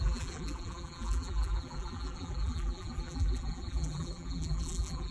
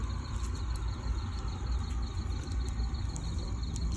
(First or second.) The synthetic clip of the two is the first